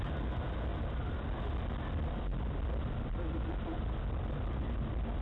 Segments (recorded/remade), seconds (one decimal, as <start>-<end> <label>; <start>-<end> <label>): 0.0-5.2 recorded